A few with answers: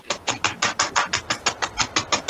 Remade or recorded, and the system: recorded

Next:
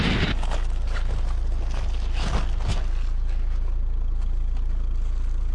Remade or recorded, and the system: recorded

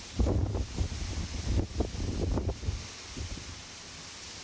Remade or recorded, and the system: recorded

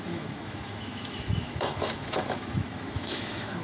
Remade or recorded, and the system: remade, autoencoder, DAC-VAE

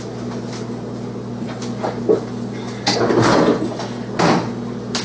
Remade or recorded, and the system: recorded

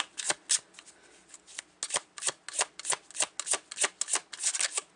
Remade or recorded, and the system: recorded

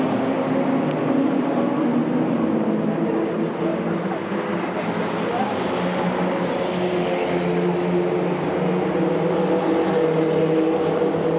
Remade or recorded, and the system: recorded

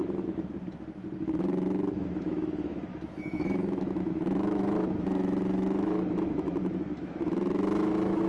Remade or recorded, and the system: remade, autoencoder, DAC-VAE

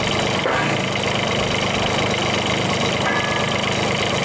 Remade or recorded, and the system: recorded